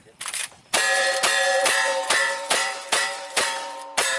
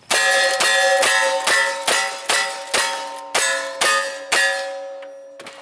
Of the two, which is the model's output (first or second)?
first